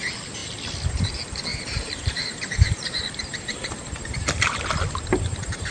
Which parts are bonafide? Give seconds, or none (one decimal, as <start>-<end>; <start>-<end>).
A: 0.0-1.5; 4.6-5.7